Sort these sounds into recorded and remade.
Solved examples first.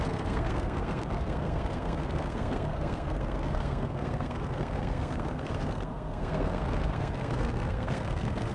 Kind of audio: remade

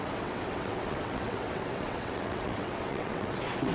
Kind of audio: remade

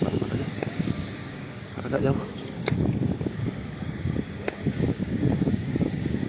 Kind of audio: remade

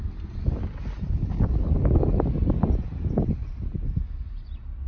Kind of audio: recorded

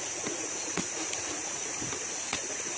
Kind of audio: remade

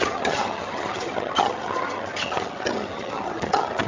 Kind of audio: remade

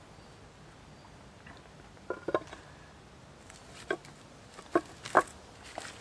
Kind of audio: recorded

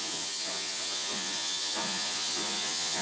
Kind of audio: remade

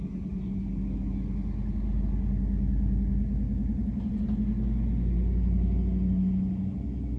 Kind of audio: recorded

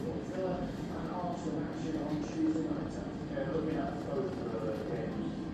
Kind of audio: recorded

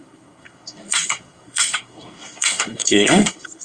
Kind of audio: remade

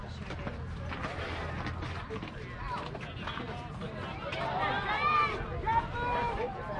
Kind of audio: recorded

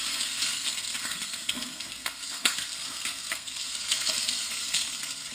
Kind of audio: remade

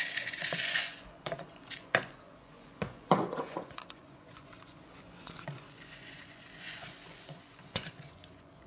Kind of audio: remade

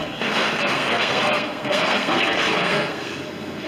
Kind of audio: remade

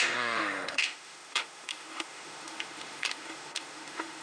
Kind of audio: remade